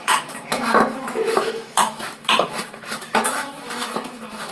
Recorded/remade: remade